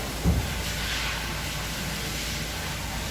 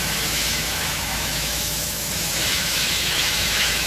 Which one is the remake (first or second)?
second